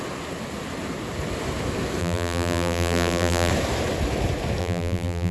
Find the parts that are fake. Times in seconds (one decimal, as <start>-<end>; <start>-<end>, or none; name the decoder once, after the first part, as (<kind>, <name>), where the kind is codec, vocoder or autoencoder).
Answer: 2.0-3.5 (vocoder, BigVGAN v2); 4.6-5.3